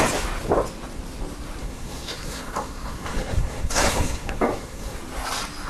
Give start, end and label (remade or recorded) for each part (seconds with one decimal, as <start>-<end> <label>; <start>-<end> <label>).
0.0-1.6 recorded; 1.6-5.0 remade; 5.0-5.7 recorded